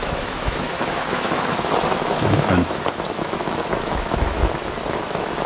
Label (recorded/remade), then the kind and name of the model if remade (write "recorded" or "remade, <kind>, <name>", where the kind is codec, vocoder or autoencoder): remade, autoencoder, DAC-VAE